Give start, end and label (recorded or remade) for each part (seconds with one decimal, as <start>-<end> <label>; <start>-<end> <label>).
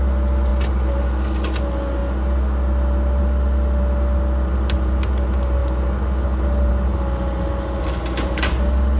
0.0-9.0 recorded